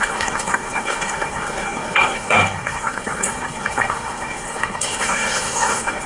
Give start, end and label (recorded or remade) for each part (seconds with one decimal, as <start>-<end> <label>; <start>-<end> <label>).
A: 0.0-6.1 remade